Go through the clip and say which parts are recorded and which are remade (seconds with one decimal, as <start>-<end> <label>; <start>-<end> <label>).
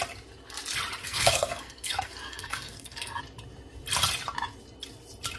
0.0-1.0 recorded; 1.0-3.2 remade; 3.2-5.4 recorded